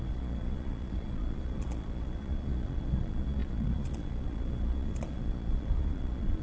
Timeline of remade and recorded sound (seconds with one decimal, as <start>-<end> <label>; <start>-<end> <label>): 0.0-6.4 remade